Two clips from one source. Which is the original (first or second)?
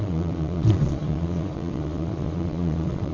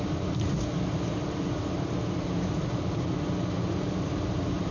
second